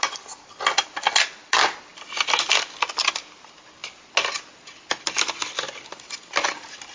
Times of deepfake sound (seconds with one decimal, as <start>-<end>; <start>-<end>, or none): none